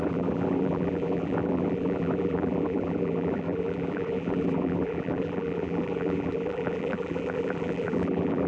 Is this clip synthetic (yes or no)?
yes